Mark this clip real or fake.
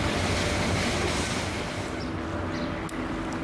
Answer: real